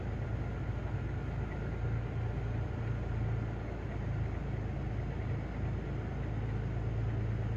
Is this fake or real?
real